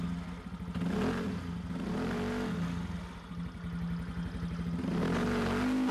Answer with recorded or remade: recorded